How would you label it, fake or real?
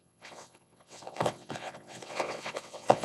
fake